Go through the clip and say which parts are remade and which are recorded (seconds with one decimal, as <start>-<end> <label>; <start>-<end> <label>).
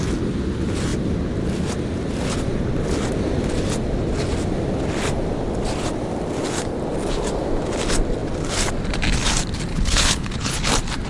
0.0-9.7 recorded; 9.7-10.7 remade; 10.7-11.1 recorded